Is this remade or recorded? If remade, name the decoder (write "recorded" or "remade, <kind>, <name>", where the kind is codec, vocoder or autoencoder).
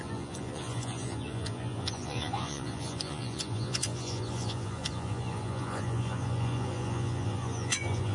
remade, vocoder, Vocos